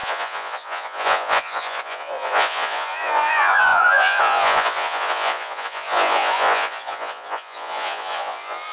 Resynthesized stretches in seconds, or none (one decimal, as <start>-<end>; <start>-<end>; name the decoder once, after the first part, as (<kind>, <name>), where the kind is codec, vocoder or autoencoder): 0.0-8.7 (vocoder, Vocos)